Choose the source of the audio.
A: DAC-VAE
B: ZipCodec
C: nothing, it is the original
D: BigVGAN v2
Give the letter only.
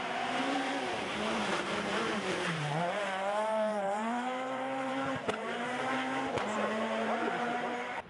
D